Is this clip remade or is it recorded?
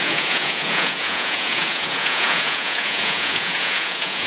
remade